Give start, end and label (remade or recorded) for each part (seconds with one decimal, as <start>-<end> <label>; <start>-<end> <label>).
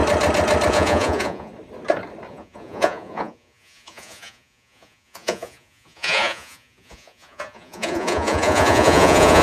0.0-0.7 recorded; 0.7-1.5 remade; 1.5-2.3 recorded; 2.3-9.4 remade